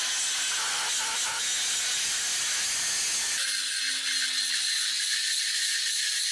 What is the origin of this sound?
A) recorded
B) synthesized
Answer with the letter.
A